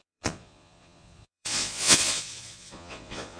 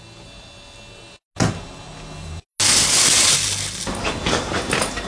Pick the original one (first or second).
second